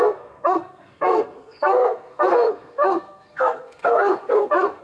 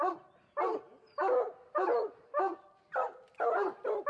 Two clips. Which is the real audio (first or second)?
second